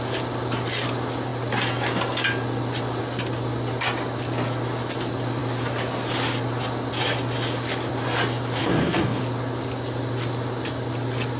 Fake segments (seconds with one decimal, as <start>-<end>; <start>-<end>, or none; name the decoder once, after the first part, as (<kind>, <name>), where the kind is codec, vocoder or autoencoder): 8.6-9.2 (codec, DAC)